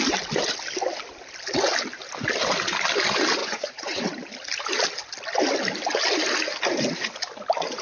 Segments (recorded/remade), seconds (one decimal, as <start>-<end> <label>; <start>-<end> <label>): 0.0-3.4 recorded; 3.4-4.0 remade; 4.0-7.8 recorded

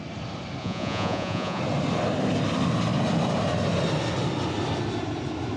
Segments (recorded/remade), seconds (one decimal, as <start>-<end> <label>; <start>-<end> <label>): 0.0-0.6 recorded; 0.6-1.6 remade; 1.6-5.6 recorded

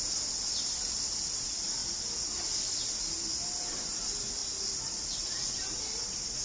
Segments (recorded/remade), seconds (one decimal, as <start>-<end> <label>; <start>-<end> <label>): 0.0-6.4 recorded

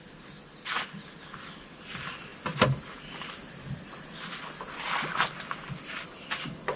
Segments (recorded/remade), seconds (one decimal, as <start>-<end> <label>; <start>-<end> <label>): 0.0-6.8 recorded

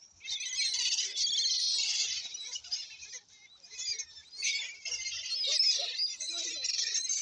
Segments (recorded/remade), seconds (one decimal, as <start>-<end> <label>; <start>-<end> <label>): 0.0-7.2 recorded

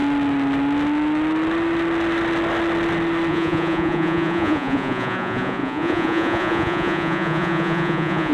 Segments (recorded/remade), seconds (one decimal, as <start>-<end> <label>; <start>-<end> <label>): 0.0-3.3 recorded; 3.3-8.3 remade